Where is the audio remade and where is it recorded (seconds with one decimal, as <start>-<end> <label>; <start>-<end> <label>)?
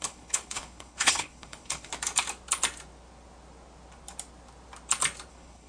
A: 0.0-1.9 remade; 1.9-5.3 recorded; 5.3-5.7 remade